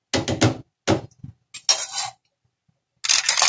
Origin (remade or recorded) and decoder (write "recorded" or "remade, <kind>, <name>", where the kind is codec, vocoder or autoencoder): recorded